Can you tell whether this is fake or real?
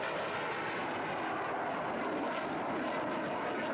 real